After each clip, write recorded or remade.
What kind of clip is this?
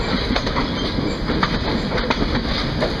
recorded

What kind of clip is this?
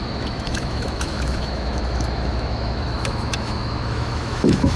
remade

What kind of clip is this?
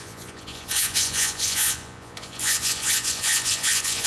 remade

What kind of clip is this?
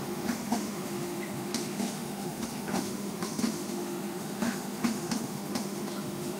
remade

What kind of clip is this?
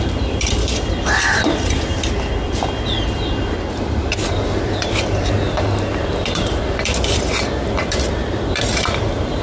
remade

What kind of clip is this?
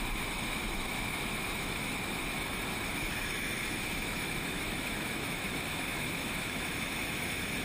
remade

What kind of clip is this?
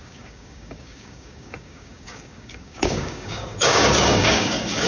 remade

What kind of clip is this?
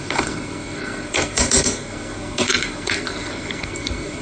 remade